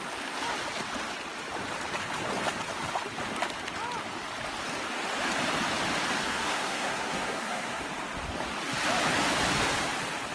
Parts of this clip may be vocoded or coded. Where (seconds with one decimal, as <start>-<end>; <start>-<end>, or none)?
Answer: 6.2-7.8